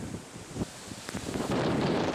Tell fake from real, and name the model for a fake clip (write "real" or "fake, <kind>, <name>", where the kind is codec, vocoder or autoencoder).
fake, vocoder, BigVGAN v2